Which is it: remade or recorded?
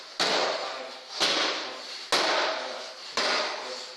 recorded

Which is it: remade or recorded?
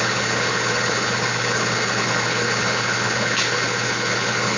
remade